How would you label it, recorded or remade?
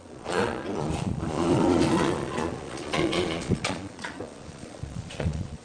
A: remade